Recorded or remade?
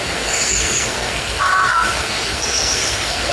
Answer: remade